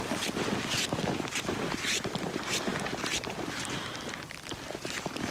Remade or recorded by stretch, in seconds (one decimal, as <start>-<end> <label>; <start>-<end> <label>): 0.0-5.3 recorded

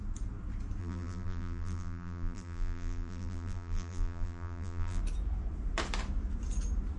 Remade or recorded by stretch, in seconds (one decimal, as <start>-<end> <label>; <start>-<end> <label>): 0.0-0.8 recorded; 0.8-5.0 remade; 5.0-7.0 recorded

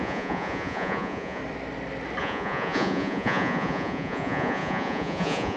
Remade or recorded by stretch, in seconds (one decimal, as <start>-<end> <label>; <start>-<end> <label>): 0.0-1.4 remade; 1.4-2.2 recorded; 2.2-5.6 remade

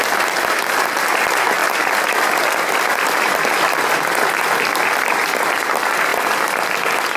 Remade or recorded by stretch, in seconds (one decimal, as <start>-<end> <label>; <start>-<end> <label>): 0.0-1.6 recorded; 1.6-3.2 remade; 3.2-6.1 recorded; 6.1-6.6 remade; 6.6-7.2 recorded

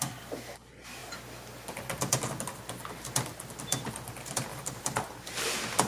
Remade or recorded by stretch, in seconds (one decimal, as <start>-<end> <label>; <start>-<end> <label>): 0.0-4.5 recorded; 4.5-5.9 remade

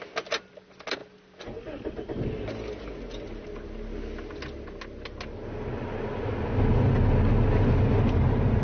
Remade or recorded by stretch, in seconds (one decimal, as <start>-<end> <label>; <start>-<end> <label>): 0.0-8.6 recorded